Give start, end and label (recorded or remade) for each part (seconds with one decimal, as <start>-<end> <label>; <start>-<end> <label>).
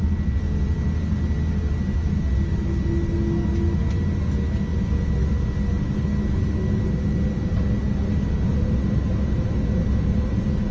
0.0-10.7 recorded